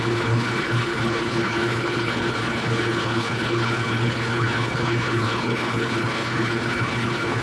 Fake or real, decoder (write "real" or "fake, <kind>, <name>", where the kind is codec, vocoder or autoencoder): fake, codec, HILCodec